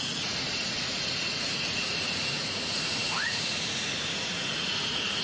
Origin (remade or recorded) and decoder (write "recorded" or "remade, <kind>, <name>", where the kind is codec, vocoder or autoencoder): remade, vocoder, Vocos